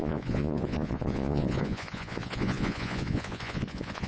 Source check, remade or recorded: remade